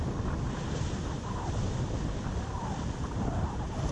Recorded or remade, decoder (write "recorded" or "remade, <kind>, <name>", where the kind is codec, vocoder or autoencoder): remade, vocoder, BigVGAN v2